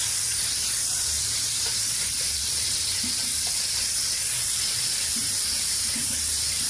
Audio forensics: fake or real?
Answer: fake